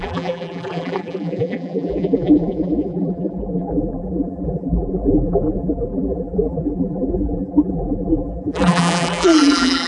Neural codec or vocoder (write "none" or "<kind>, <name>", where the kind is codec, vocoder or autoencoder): vocoder, BigVGAN v2